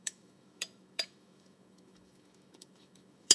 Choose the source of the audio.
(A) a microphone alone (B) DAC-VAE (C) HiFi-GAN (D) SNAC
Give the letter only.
B